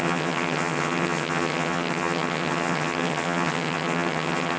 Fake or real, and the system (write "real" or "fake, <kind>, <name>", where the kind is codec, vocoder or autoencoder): fake, vocoder, HiFi-GAN